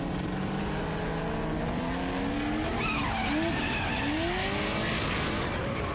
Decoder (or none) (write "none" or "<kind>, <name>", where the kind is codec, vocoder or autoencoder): none